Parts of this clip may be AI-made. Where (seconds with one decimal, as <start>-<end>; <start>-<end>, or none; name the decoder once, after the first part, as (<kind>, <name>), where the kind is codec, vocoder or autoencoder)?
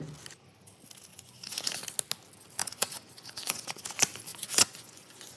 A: 1.1-1.7 (vocoder, Vocos); 2.6-3.8; 4.3-5.4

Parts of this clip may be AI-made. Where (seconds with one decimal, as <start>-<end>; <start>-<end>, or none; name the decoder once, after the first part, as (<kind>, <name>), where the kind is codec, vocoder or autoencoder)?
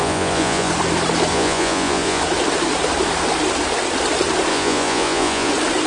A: 0.0-0.7 (vocoder, Vocos); 1.3-2.2; 4.5-5.5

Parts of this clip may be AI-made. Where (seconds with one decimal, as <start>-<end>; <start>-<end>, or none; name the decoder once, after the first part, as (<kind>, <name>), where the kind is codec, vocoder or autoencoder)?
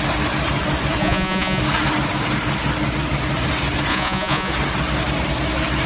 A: 1.0-1.6 (vocoder, Vocos); 3.9-4.5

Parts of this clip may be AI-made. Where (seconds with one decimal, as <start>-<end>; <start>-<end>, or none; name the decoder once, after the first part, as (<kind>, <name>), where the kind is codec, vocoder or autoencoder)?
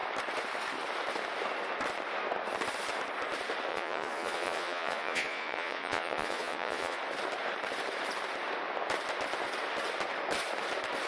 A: 3.7-7.0 (vocoder, Vocos)